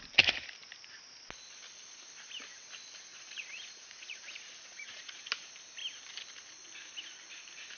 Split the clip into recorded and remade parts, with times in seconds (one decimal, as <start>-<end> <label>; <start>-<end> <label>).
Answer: 0.0-3.1 recorded; 3.1-5.2 remade; 5.2-7.8 recorded